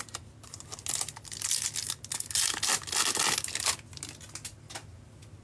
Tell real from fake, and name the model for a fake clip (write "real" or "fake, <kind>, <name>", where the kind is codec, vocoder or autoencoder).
real